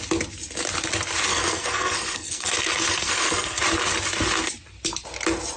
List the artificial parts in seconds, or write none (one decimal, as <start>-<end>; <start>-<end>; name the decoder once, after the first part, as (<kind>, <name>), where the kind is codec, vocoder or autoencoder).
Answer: 1.3-3.6 (codec, SNAC)